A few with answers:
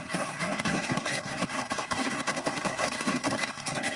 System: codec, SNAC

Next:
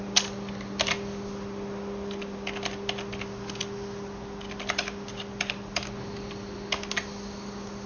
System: none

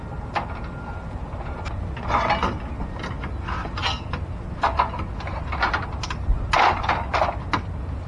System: none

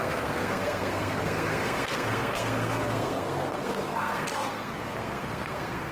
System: codec, SNAC